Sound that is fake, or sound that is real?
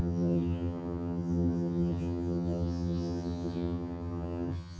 fake